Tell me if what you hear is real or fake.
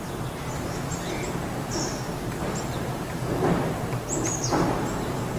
fake